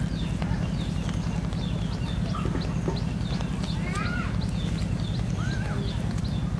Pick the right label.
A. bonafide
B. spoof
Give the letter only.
A